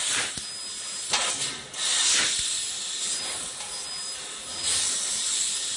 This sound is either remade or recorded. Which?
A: recorded